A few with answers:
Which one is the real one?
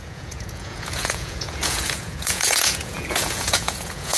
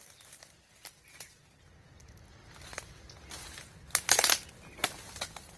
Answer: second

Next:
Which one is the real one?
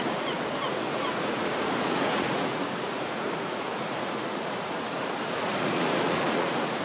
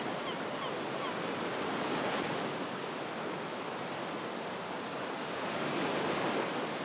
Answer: second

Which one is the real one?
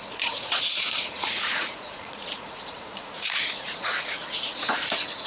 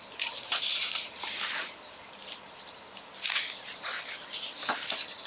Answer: second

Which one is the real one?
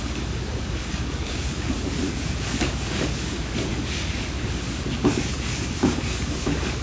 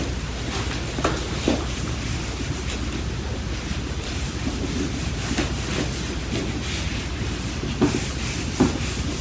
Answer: second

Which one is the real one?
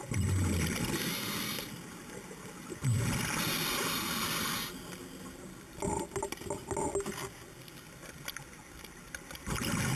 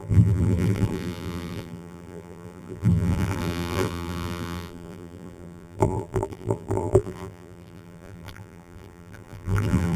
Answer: first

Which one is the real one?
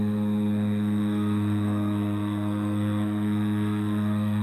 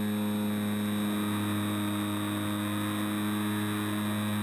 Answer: second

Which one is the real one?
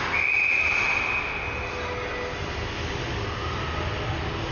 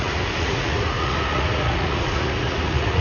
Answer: first